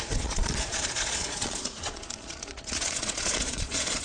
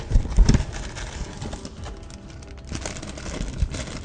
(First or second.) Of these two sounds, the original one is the second